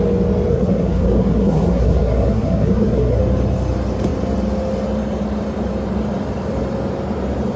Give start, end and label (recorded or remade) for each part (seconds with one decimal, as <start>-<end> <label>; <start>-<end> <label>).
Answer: 0.0-0.5 recorded; 0.5-3.2 remade; 3.2-7.6 recorded